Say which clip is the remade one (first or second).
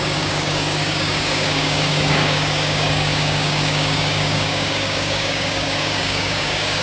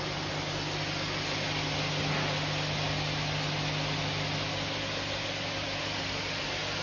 first